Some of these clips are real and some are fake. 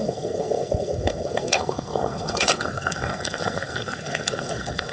fake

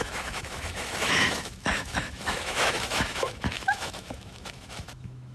fake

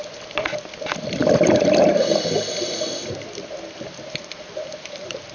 fake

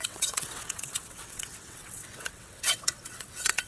fake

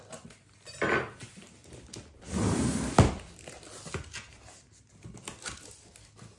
real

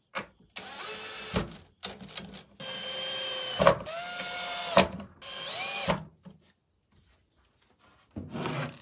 real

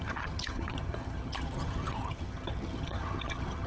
fake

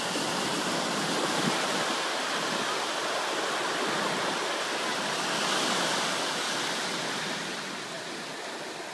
real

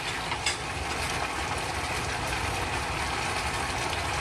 real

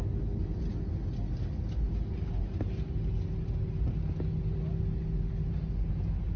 real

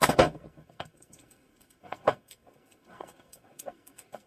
fake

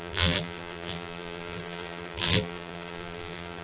fake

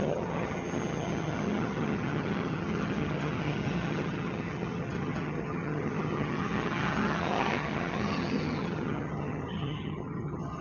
fake